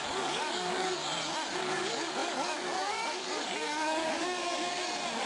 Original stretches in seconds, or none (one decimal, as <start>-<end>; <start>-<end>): 1.0-1.6; 4.4-5.3